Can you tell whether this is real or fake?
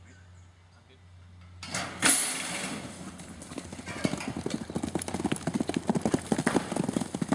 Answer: real